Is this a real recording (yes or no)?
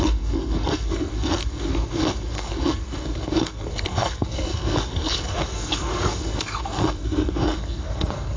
no